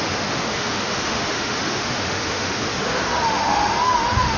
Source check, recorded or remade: remade